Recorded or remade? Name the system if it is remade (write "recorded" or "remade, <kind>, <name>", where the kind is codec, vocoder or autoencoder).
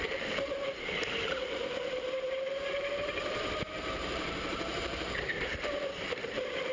remade, vocoder, BigVGAN v2